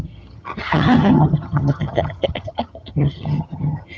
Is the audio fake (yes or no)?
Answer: yes